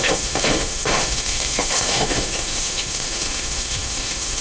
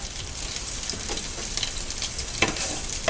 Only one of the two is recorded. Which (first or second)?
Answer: second